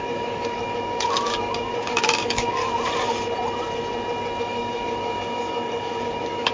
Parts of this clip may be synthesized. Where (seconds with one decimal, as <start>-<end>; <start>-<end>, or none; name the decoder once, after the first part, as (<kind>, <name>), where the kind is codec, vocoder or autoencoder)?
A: 0.0-2.6 (codec, DAC); 4.4-6.5